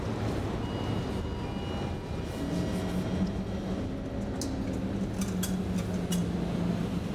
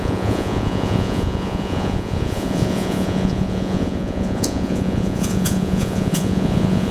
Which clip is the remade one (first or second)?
second